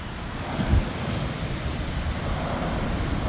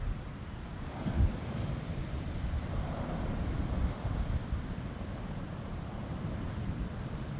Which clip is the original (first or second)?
first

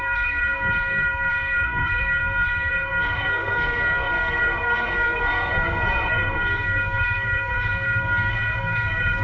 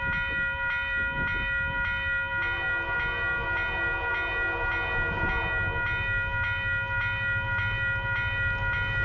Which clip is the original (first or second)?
second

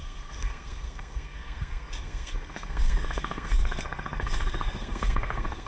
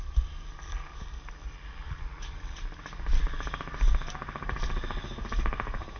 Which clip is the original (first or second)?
second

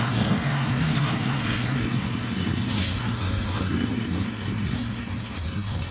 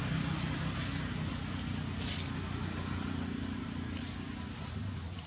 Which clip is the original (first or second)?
second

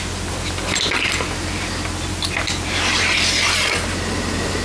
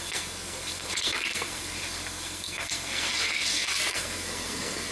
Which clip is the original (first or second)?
first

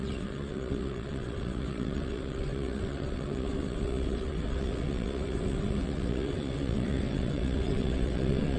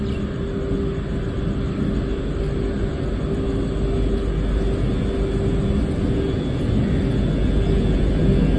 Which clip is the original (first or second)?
second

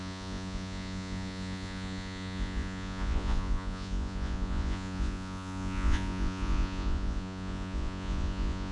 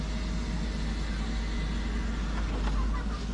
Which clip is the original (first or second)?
second